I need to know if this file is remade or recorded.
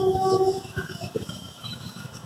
remade